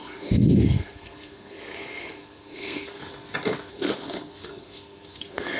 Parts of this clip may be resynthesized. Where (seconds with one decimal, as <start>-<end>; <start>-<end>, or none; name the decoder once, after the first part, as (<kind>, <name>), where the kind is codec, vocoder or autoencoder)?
0.0-3.0 (codec, SNAC); 3.7-5.6